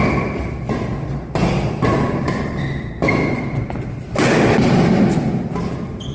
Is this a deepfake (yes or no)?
no